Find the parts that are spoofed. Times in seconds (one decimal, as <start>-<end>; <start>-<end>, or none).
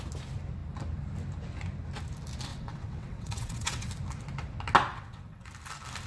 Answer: 2.5-3.9; 4.9-5.5